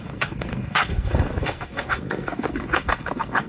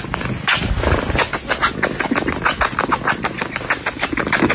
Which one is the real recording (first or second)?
second